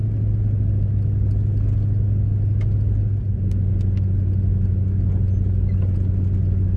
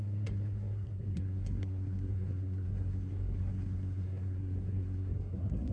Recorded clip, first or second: first